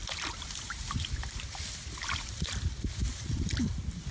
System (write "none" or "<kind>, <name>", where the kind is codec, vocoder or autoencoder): none